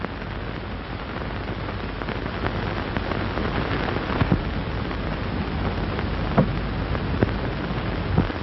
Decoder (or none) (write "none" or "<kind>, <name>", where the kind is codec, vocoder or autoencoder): none